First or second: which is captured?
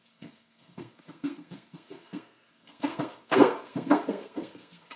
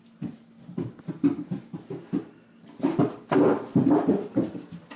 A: second